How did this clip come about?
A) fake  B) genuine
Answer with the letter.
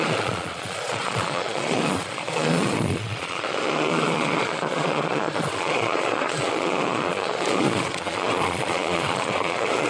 A